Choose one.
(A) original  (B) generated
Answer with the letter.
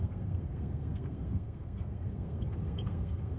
B